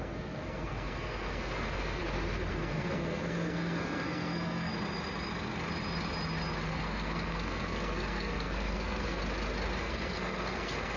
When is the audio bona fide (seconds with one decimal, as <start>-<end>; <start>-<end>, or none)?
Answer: 2.0-2.5; 4.7-6.7; 9.2-9.8